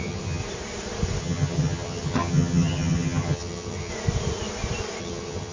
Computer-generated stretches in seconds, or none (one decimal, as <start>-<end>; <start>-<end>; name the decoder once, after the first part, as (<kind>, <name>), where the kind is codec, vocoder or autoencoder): 0.0-0.4 (vocoder, HiFi-GAN); 1.2-3.9; 5.0-5.5